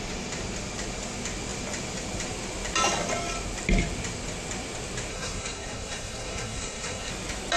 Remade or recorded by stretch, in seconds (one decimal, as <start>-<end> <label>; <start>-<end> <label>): 0.0-5.1 recorded; 5.1-7.1 remade; 7.1-7.6 recorded